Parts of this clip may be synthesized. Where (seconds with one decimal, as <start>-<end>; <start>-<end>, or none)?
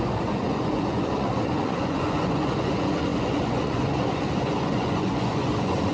0.0-5.9